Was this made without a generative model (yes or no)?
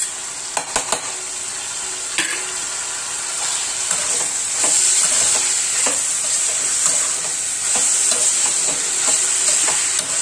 yes